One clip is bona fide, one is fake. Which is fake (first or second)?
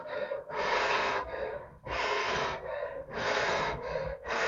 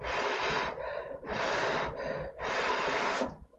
first